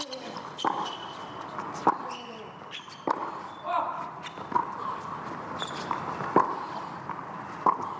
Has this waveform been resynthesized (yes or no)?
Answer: no